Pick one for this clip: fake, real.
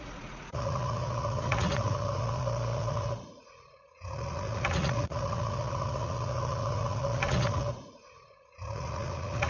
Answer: fake